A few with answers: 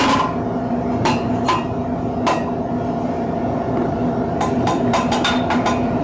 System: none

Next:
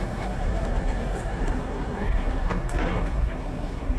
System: codec, SNAC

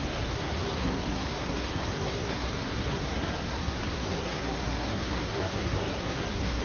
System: codec, SNAC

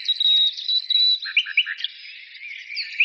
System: none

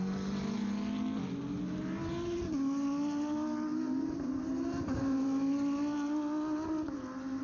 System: none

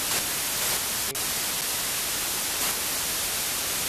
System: none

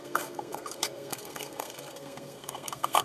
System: codec, SNAC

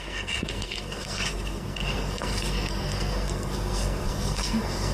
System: codec, SNAC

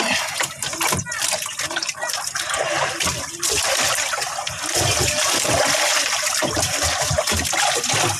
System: none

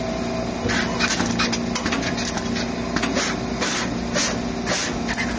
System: none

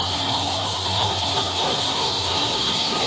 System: codec, SNAC